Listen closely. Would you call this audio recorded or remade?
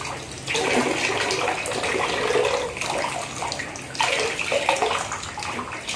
recorded